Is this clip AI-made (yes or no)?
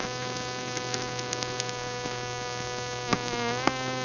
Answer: yes